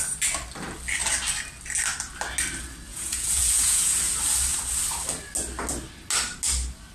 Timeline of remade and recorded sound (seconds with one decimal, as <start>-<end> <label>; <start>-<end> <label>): 0.0-2.9 recorded; 2.9-4.0 remade; 4.0-6.9 recorded